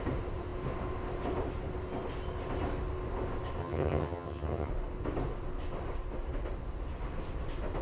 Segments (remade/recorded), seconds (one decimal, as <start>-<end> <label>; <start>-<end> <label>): 0.0-3.6 recorded; 3.6-4.7 remade; 4.7-7.8 recorded